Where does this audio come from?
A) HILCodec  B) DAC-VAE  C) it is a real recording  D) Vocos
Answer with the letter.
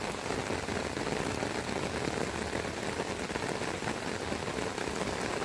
C